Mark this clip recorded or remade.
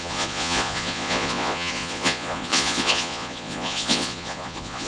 remade